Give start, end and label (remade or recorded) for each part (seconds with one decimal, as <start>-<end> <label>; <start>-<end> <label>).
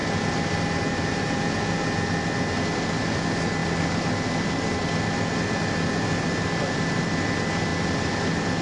0.0-8.6 recorded